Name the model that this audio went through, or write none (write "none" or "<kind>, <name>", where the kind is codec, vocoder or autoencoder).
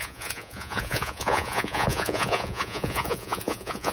vocoder, Vocos